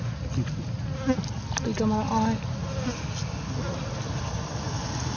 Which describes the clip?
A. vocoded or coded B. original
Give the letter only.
B